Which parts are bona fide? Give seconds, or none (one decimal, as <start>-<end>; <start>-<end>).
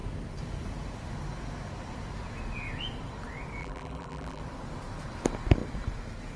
0.0-3.6; 4.4-6.4